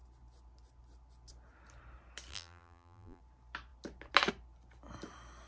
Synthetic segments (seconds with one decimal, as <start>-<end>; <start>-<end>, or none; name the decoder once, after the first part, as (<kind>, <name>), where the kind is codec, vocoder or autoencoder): 2.3-3.2 (vocoder, BigVGAN v2)